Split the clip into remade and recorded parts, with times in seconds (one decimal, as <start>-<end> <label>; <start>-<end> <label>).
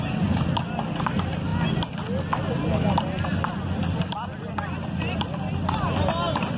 0.0-6.6 recorded